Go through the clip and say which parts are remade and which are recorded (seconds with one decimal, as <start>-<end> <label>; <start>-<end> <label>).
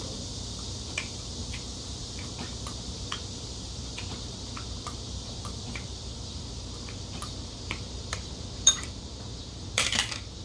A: 0.0-10.4 remade